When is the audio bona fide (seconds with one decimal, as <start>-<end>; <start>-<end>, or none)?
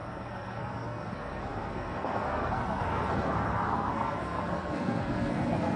none